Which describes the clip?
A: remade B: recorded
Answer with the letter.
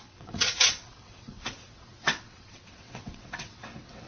A